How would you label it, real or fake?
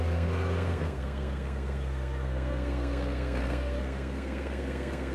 fake